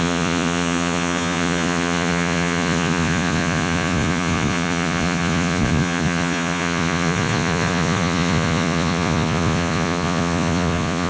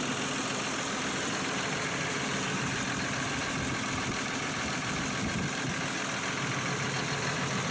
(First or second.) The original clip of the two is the second